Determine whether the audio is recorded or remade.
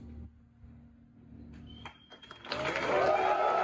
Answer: recorded